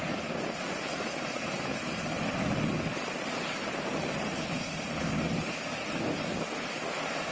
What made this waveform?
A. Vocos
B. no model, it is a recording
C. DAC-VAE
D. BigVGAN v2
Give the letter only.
B